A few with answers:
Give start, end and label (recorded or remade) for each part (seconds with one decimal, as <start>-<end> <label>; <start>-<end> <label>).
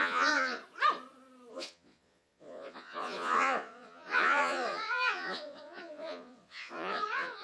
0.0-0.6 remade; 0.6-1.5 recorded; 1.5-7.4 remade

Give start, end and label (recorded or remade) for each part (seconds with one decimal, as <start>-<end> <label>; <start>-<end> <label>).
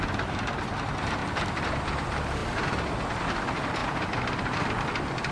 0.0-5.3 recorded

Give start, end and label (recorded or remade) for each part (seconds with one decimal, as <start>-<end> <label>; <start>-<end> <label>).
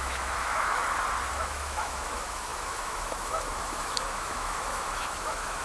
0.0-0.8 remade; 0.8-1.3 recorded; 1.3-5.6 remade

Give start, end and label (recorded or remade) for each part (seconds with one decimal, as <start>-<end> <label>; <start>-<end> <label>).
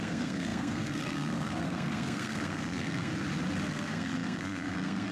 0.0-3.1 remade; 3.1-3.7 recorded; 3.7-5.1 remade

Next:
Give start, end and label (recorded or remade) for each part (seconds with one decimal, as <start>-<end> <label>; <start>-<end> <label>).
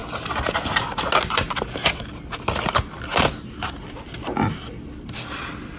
0.0-5.8 recorded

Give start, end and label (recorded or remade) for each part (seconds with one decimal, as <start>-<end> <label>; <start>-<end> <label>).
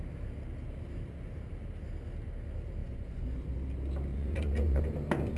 0.0-2.8 recorded; 2.8-3.5 remade; 3.5-4.1 recorded; 4.1-4.8 remade; 4.8-5.4 recorded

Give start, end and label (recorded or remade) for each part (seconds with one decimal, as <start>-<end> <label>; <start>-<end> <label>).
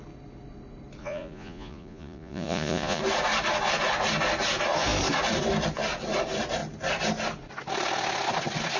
0.0-1.0 recorded; 1.0-3.0 remade; 3.0-8.8 recorded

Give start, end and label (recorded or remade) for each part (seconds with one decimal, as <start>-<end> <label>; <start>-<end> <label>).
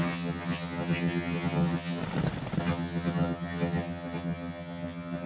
0.0-2.0 remade; 2.0-2.6 recorded; 2.6-5.3 remade